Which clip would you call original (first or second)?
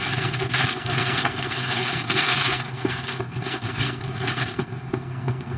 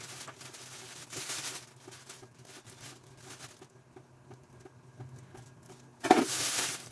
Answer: second